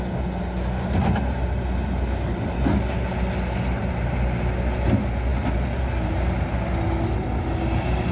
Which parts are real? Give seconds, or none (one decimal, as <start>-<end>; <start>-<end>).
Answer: 0.0-8.1